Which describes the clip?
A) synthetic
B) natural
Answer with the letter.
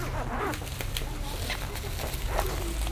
B